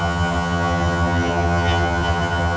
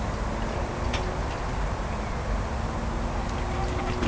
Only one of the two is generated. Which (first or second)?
first